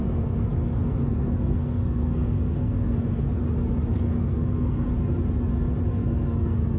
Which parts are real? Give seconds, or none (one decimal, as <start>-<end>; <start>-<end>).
3.4-3.9; 4.9-5.9